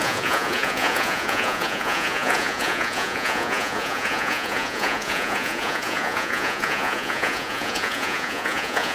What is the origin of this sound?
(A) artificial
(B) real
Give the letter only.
A